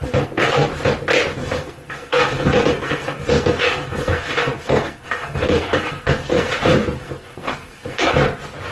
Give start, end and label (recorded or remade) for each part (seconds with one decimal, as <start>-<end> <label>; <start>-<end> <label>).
0.0-0.7 remade; 0.7-1.4 recorded; 1.4-6.5 remade; 6.5-7.0 recorded; 7.0-8.1 remade; 8.1-8.7 recorded